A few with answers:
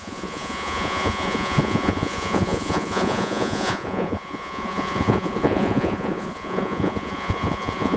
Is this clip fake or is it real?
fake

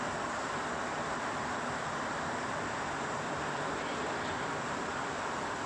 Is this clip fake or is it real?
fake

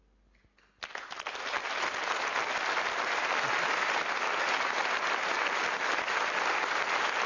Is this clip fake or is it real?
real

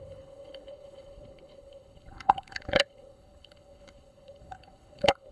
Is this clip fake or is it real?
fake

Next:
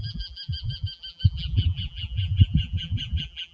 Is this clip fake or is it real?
fake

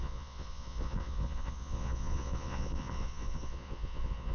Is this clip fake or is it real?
fake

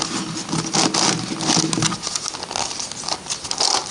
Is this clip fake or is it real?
real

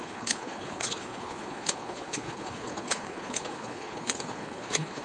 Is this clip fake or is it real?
fake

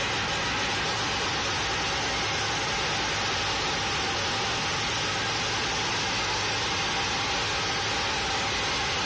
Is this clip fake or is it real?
real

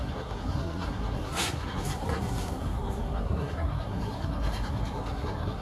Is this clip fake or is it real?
fake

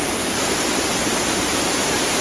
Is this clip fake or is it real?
real